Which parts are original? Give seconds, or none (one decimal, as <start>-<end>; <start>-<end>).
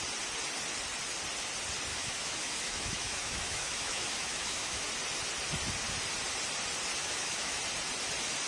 0.0-1.9; 4.8-7.0; 7.6-8.5